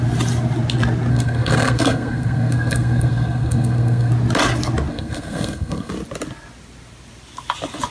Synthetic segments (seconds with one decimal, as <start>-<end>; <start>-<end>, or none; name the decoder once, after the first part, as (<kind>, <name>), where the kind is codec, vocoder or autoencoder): 1.1-4.1 (codec, SNAC); 4.9-5.9

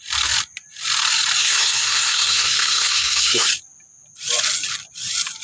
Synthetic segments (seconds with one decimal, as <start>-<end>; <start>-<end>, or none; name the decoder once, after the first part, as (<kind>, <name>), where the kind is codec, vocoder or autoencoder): 1.4-3.5 (codec, SNAC)

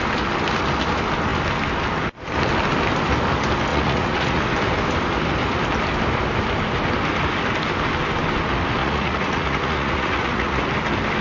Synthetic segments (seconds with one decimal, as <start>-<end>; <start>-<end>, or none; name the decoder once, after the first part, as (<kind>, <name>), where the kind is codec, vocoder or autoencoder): 3.7-4.4 (vocoder, Vocos); 8.8-10.6

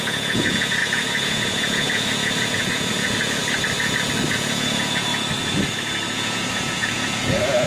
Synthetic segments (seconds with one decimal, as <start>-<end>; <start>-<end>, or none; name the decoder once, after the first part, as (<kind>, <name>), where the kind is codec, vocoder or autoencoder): 0.0-3.4 (vocoder, Vocos); 4.3-5.1; 6.1-7.7

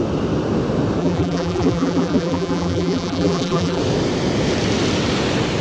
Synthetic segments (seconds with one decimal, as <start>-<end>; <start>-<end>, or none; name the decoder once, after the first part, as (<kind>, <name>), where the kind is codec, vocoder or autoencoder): 1.0-3.8 (vocoder, BigVGAN v2)